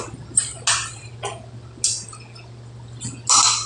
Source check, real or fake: real